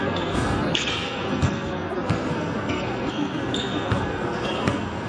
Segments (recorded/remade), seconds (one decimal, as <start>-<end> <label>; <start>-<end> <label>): 0.0-5.1 remade